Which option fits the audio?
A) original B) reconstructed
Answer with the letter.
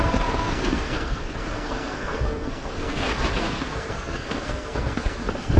B